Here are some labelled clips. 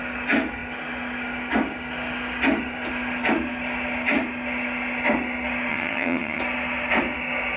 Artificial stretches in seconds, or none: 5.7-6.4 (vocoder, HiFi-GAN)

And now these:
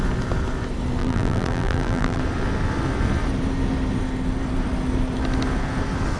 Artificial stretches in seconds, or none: 1.0-2.2 (vocoder, BigVGAN v2)

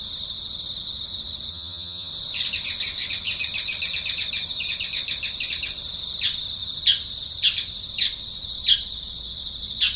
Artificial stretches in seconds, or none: 1.5-2.1 (vocoder, HiFi-GAN)

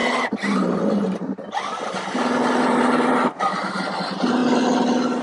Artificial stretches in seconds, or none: none

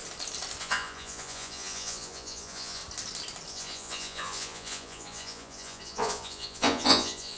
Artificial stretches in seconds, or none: 0.6-2.8 (vocoder, Vocos); 3.5-7.4